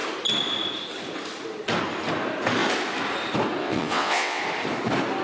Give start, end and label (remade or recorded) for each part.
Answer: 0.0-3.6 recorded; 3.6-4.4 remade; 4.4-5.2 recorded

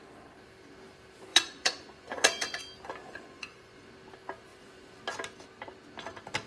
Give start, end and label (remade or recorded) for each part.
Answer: 0.0-1.3 recorded; 1.3-2.6 remade; 2.6-3.0 recorded; 3.0-3.9 remade; 3.9-4.5 recorded; 4.5-5.0 remade; 5.0-6.5 recorded

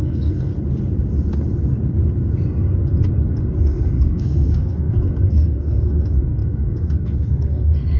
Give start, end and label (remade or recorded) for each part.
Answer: 0.0-0.5 remade; 0.5-3.6 recorded; 3.6-8.0 remade